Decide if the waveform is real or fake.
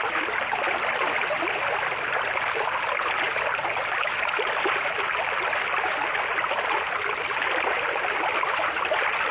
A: real